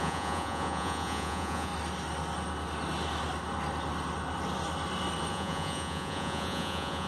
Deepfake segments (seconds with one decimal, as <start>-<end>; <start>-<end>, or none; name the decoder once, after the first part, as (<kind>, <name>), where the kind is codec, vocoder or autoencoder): 0.0-1.7 (vocoder, Vocos); 5.3-7.1